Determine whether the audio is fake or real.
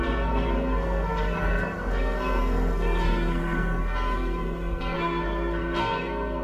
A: fake